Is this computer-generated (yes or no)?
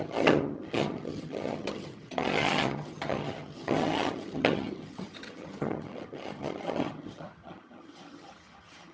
yes